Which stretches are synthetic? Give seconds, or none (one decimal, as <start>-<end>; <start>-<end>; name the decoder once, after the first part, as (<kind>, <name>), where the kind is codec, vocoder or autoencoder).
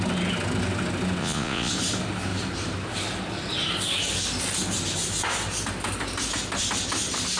1.2-1.7 (vocoder, Vocos)